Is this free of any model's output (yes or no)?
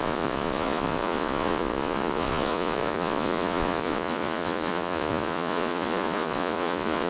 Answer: no